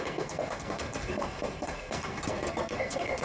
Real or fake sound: fake